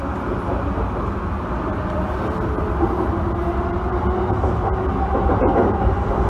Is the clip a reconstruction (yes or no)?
no